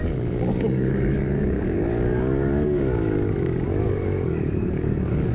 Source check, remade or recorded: remade